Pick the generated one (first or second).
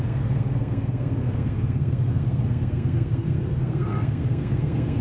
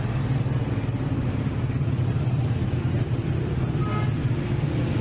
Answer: first